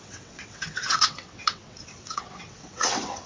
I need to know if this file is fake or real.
fake